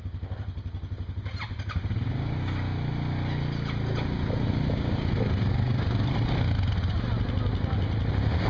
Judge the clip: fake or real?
real